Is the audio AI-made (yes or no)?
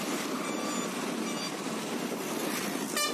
no